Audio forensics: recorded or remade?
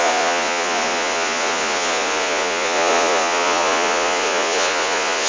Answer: remade